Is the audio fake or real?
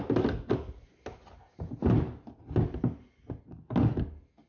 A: real